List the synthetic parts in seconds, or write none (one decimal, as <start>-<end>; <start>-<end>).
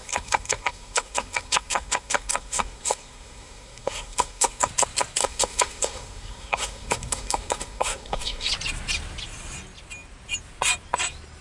0.0-4.7; 5.2-8.5